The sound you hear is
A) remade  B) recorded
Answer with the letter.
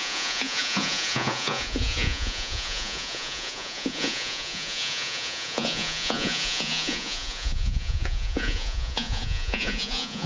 A